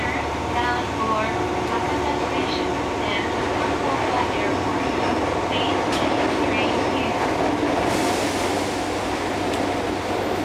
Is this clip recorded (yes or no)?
yes